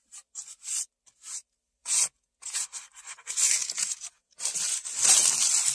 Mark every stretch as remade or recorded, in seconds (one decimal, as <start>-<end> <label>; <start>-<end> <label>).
0.0-1.8 recorded; 1.8-2.6 remade; 2.6-3.6 recorded; 3.6-4.4 remade; 4.4-5.7 recorded